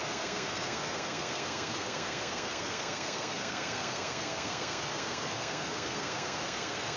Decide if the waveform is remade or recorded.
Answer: remade